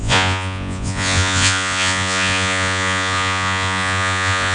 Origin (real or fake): fake